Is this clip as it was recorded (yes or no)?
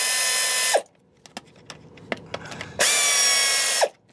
yes